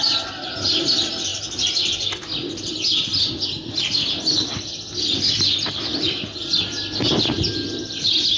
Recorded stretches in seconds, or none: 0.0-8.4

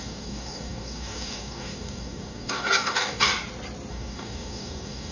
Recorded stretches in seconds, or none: 3.3-3.9

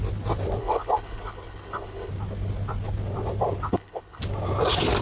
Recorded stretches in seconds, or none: 0.0-0.6; 2.1-3.7; 4.2-5.0

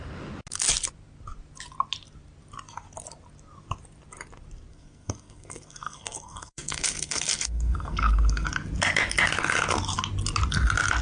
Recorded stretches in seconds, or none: 0.0-4.7; 8.5-11.0

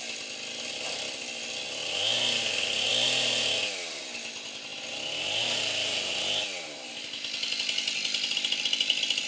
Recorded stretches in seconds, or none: 0.0-9.3

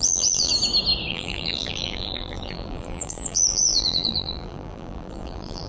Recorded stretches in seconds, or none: 0.5-1.1